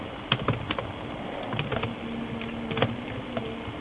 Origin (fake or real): real